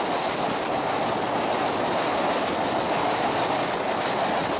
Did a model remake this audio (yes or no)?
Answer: no